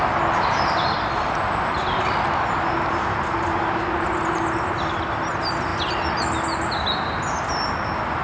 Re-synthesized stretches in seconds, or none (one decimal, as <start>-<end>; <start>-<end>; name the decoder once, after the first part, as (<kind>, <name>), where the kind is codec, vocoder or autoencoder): none